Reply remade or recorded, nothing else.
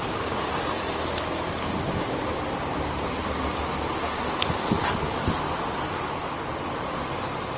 recorded